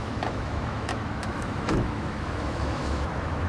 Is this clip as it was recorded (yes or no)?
no